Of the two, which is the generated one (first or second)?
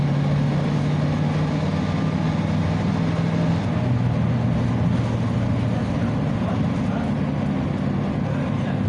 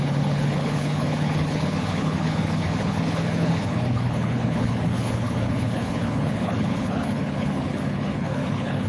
second